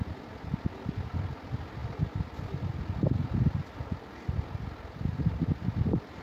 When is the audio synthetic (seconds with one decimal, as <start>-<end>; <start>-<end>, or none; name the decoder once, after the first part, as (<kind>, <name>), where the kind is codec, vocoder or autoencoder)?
1.8-5.4 (vocoder, BigVGAN v2)